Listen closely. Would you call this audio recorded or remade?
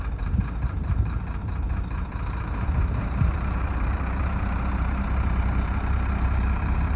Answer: remade